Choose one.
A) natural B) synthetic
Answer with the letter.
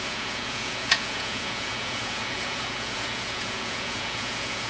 B